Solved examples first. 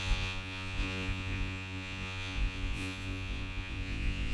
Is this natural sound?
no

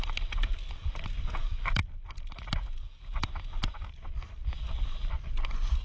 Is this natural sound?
yes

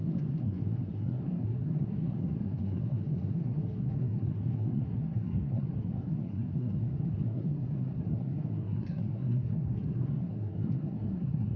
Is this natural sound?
no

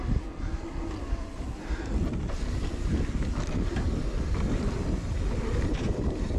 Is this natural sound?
yes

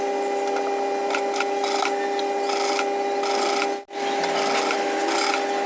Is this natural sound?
yes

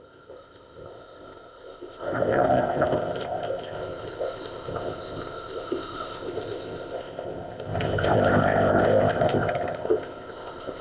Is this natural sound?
no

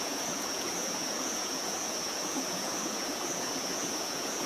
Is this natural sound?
no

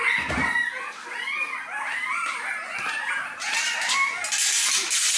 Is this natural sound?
yes